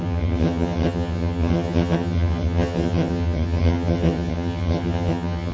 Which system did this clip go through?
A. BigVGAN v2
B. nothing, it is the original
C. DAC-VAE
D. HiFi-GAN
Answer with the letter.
D